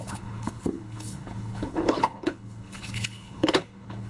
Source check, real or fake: fake